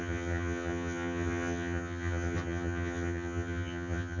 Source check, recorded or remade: remade